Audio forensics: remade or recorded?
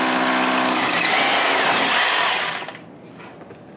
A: recorded